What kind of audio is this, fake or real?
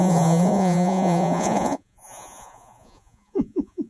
fake